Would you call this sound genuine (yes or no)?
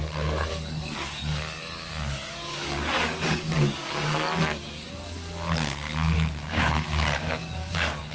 no